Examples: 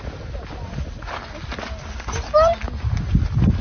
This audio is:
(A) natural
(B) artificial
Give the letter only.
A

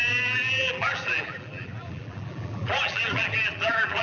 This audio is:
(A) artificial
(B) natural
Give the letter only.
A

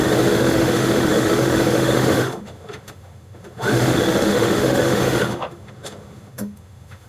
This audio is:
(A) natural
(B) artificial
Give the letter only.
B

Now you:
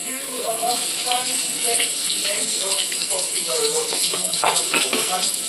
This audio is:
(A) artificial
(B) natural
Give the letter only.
A